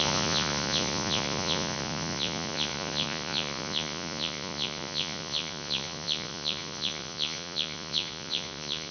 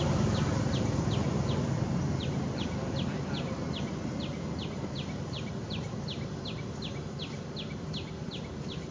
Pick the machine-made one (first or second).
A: first